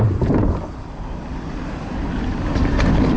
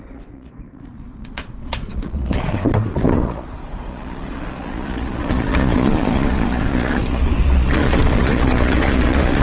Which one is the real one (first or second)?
first